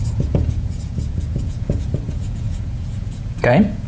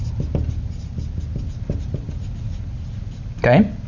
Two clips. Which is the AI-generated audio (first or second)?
first